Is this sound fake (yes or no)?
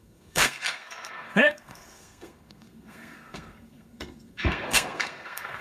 yes